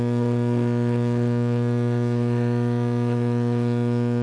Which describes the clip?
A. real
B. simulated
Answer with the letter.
B